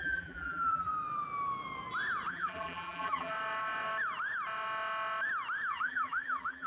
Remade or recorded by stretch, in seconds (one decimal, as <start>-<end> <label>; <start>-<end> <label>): 0.0-0.9 remade; 0.9-2.3 recorded; 2.3-3.3 remade; 3.3-5.7 recorded; 5.7-6.7 remade